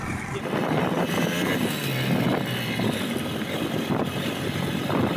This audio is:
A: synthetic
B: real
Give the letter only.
B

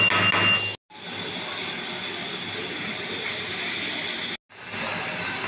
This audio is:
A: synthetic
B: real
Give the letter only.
B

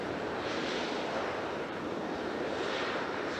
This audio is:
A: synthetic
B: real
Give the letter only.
A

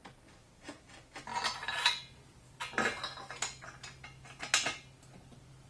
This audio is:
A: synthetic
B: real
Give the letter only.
B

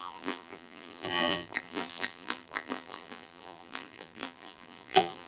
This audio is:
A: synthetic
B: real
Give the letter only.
A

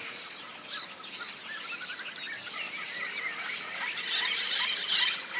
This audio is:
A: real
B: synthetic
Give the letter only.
A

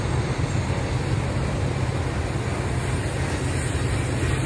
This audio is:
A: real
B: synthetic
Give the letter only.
A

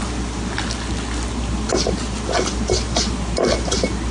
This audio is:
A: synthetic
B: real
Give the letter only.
B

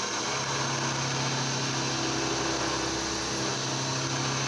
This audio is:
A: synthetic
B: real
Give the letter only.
B